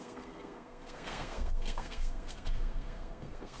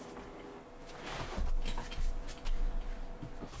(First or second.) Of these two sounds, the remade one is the first